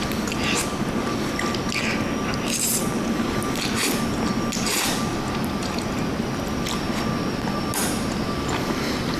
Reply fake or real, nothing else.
real